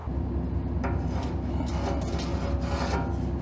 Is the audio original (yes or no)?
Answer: yes